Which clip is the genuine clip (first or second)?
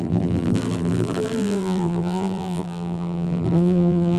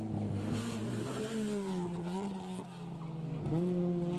second